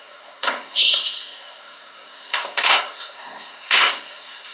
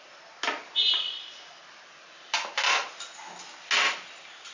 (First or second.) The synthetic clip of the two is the first